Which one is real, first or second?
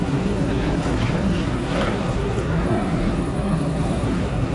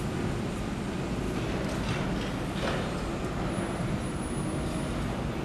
second